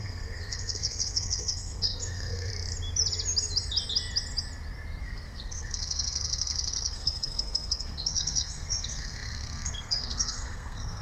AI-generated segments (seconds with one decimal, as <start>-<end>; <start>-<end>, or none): 0.0-2.5; 5.0-11.0